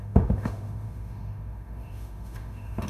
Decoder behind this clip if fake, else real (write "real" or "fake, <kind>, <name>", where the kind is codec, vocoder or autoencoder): fake, autoencoder, DAC-VAE